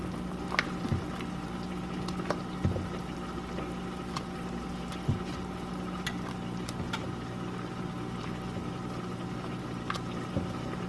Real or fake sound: real